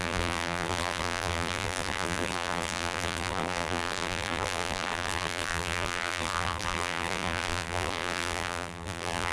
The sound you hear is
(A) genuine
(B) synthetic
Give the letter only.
B